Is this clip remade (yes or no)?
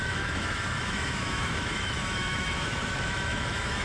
yes